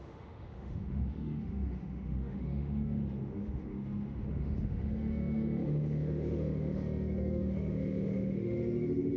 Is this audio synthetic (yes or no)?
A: yes